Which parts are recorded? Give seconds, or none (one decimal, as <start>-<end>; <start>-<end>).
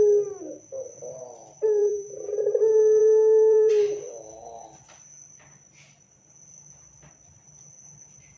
0.0-1.8; 2.4-3.0; 3.7-8.4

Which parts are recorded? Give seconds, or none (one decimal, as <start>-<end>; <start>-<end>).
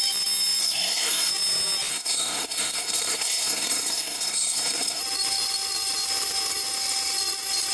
0.0-0.6; 1.3-1.9; 5.0-7.7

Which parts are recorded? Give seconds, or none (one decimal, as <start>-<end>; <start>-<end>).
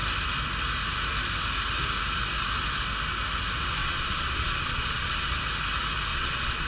0.0-3.8; 5.3-6.1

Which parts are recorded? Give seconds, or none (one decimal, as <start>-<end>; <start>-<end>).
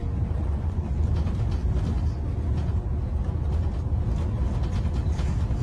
0.0-0.4; 1.1-5.6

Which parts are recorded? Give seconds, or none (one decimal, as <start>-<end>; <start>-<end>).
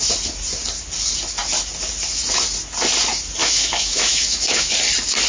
0.0-3.4; 4.7-5.3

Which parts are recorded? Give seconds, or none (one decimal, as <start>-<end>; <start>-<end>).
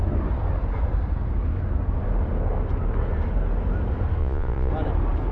0.0-4.2; 4.7-5.3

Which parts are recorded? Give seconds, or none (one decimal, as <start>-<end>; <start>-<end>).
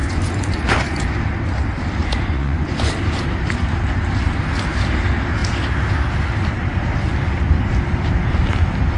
0.6-2.0; 2.9-9.0